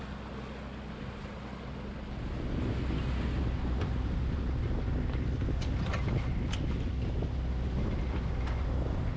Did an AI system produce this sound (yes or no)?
no